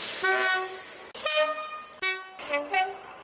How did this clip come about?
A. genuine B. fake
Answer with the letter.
A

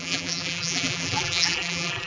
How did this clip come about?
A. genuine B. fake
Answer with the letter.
B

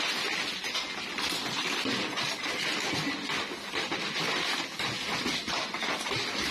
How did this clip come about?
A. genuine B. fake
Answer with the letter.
A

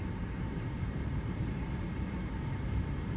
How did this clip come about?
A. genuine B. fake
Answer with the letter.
B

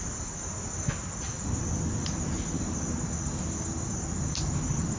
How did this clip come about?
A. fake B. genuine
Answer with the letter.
B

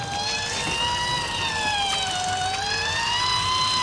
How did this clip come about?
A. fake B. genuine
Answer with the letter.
B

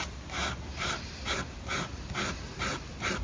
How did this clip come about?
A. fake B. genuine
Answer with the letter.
A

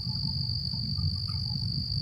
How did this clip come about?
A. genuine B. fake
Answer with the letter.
A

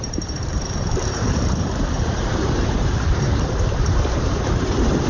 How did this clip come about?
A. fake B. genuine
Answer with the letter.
A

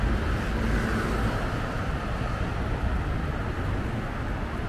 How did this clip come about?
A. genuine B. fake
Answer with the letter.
A